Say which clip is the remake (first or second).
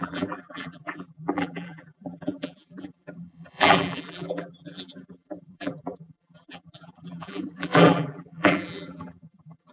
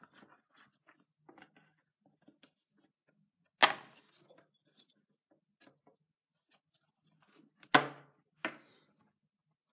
first